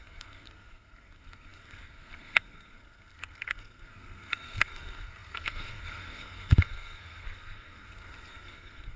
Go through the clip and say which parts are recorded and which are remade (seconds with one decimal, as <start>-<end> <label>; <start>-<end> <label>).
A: 0.0-9.0 remade